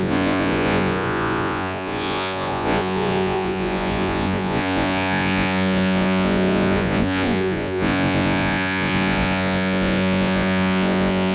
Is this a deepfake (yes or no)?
yes